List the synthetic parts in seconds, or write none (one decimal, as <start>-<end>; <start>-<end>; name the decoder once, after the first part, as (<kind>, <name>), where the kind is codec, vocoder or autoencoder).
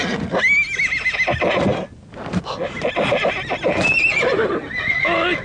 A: none